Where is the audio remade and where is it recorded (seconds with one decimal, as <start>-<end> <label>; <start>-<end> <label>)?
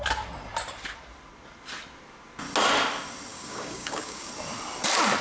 0.0-3.3 recorded; 3.3-4.3 remade; 4.3-5.2 recorded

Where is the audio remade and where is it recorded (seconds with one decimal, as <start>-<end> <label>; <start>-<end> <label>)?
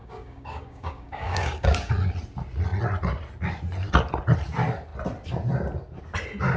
0.0-1.9 remade; 1.9-6.6 recorded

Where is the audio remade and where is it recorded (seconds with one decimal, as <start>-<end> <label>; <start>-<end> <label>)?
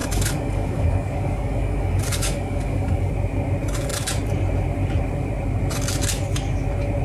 0.0-3.1 remade; 3.1-7.0 recorded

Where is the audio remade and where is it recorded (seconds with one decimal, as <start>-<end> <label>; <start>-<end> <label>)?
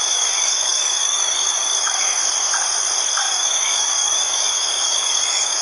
0.0-2.2 remade; 2.2-3.1 recorded; 3.1-5.6 remade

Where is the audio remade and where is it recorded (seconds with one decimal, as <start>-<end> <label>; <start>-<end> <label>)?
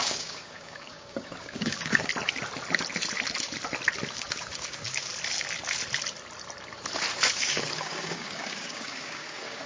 0.0-2.1 remade; 2.1-4.1 recorded; 4.1-5.1 remade; 5.1-7.3 recorded; 7.3-9.7 remade